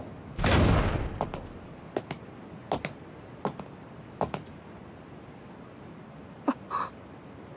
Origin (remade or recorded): recorded